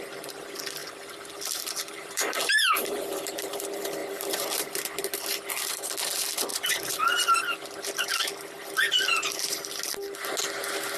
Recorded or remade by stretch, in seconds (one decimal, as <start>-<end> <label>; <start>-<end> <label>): 0.0-0.8 recorded; 0.8-3.6 remade; 3.6-4.0 recorded; 4.0-4.8 remade; 4.8-6.5 recorded; 6.5-7.3 remade; 7.3-11.0 recorded